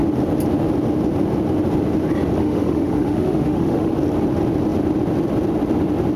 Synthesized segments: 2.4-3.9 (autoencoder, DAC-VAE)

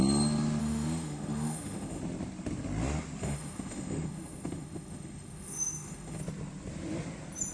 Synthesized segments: 0.6-2.0 (autoencoder, DAC-VAE); 3.2-6.2

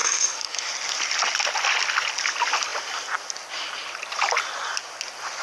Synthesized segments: 0.0-0.7 (autoencoder, DAC-VAE)

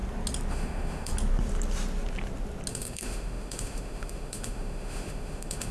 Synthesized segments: 0.5-1.1 (autoencoder, DAC-VAE); 2.7-5.7

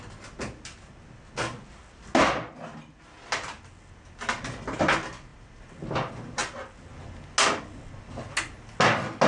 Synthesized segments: none

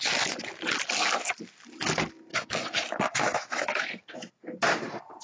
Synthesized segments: 2.3-4.0 (autoencoder, DAC-VAE)